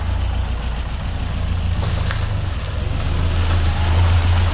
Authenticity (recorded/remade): recorded